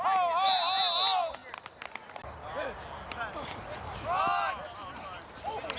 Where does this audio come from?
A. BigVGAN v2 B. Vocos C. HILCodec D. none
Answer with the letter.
D